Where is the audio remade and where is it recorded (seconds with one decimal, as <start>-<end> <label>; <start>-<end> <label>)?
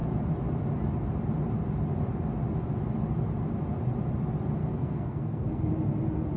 0.0-4.6 recorded; 4.6-5.7 remade; 5.7-6.4 recorded